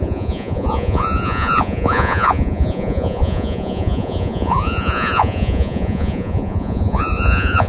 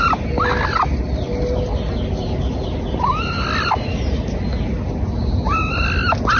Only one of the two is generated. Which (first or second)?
first